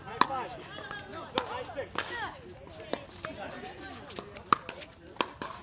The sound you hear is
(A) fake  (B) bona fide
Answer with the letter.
B